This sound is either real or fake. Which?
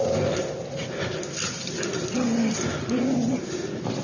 real